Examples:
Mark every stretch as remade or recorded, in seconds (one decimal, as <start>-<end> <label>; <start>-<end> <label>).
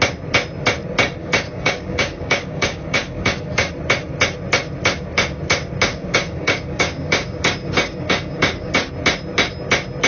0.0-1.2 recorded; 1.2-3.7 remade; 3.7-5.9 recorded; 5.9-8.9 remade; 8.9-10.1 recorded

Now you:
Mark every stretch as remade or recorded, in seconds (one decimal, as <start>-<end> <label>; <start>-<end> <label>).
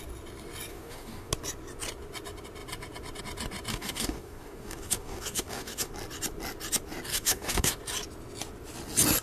0.0-0.7 recorded; 0.7-1.3 remade; 1.3-3.7 recorded; 3.7-5.9 remade; 5.9-7.1 recorded; 7.1-7.8 remade; 7.8-9.2 recorded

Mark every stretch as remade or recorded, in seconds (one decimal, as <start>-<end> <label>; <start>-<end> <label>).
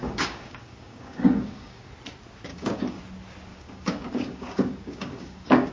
0.0-1.9 remade; 1.9-2.5 recorded; 2.5-3.0 remade; 3.0-3.5 recorded; 3.5-5.7 remade